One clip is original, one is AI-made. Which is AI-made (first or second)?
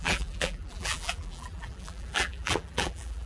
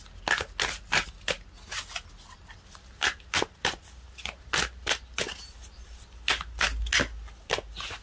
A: first